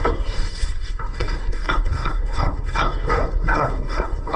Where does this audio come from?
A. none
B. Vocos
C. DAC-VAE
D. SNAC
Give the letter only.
D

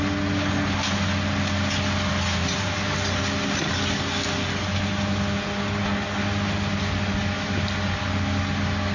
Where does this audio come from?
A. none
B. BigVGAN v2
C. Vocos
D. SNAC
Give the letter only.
A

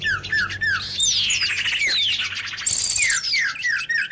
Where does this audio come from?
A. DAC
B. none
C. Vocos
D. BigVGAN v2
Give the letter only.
B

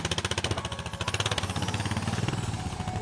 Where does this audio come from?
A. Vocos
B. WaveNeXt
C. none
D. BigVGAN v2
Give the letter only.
C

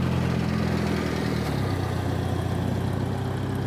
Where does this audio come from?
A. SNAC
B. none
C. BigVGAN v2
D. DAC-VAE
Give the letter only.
B